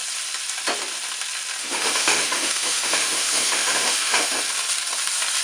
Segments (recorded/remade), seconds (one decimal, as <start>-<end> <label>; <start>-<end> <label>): 0.0-1.6 recorded; 1.6-4.4 remade; 4.4-5.4 recorded